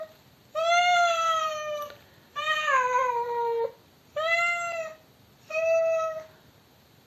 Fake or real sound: real